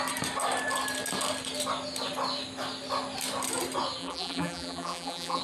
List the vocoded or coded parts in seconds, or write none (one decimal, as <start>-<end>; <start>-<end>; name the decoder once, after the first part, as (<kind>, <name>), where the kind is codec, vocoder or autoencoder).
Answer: 4.0-5.4 (vocoder, BigVGAN v2)